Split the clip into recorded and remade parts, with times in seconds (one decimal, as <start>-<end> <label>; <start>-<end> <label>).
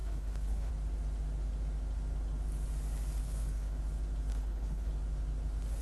0.0-0.7 remade; 0.7-3.2 recorded; 3.2-3.8 remade; 3.8-4.3 recorded; 4.3-4.9 remade; 4.9-5.8 recorded